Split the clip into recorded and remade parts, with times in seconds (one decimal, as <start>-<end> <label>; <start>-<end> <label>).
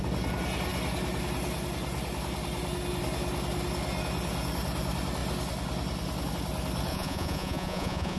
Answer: 0.0-6.9 recorded; 6.9-8.2 remade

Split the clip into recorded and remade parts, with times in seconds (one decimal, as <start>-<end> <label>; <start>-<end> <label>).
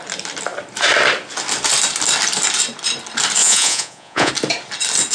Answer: 0.0-3.4 recorded; 3.4-4.3 remade; 4.3-5.1 recorded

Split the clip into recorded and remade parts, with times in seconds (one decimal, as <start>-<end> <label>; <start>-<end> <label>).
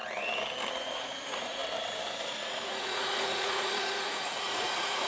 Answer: 0.0-0.7 recorded; 0.7-1.6 remade; 1.6-2.2 recorded; 2.2-5.1 remade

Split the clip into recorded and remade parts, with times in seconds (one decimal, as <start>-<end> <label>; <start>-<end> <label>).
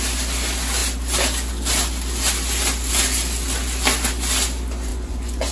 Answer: 0.0-4.9 recorded; 4.9-5.5 remade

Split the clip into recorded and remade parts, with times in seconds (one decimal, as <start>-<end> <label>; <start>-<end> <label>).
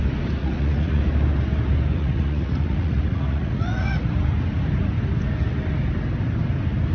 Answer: 0.0-0.4 recorded; 0.4-1.0 remade; 1.0-1.9 recorded; 1.9-4.1 remade; 4.1-6.9 recorded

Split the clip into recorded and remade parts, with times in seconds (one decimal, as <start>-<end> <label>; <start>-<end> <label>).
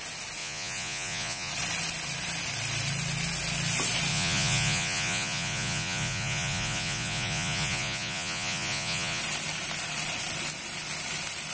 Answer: 0.0-0.4 recorded; 0.4-1.5 remade; 1.5-4.1 recorded; 4.1-9.2 remade; 9.2-11.5 recorded